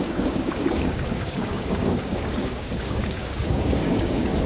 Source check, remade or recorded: remade